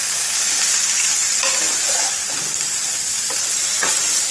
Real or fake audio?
real